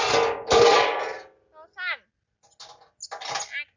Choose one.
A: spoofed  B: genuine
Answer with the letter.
B